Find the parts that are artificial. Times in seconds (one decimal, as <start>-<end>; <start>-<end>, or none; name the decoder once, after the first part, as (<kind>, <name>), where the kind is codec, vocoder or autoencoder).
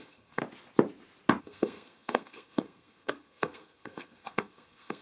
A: 0.0-0.4 (codec, SNAC); 1.4-5.0